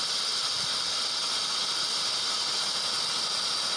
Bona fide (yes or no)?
yes